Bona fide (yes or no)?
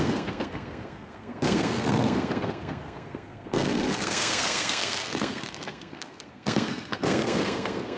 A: no